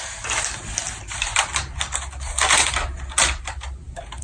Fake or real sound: real